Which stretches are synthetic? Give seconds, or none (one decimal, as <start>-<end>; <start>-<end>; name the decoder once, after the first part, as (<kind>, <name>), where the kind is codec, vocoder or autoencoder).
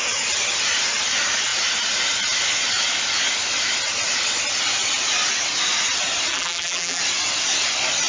6.3-7.0 (vocoder, BigVGAN v2)